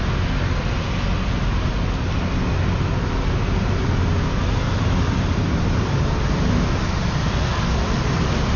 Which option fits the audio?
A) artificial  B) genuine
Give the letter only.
B